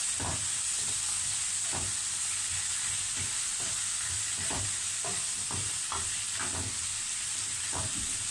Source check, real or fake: real